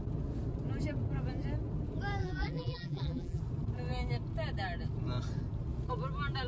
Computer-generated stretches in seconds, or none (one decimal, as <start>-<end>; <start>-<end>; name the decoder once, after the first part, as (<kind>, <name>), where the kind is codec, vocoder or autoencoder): 2.2-3.4 (vocoder, BigVGAN v2)